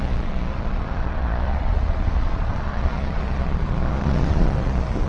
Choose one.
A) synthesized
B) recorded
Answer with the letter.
A